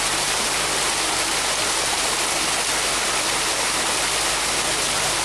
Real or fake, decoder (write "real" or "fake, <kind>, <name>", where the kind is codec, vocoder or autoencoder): real